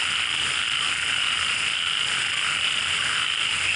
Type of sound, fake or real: real